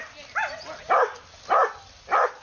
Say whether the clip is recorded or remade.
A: recorded